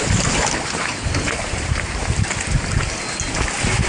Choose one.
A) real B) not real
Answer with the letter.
A